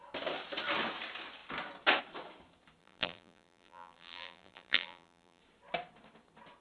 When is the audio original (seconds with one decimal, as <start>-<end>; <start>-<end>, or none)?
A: 0.0-2.8; 5.4-6.6